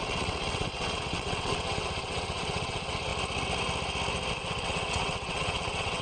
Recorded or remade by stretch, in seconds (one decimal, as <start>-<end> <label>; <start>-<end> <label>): 0.0-3.1 remade; 3.1-4.3 recorded; 4.3-6.0 remade